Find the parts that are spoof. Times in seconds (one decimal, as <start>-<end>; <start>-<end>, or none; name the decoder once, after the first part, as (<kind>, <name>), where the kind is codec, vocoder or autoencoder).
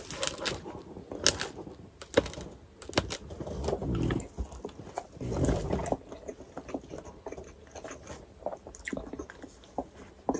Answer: none